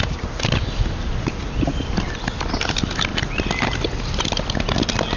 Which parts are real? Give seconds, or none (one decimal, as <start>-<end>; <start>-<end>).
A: 0.0-5.2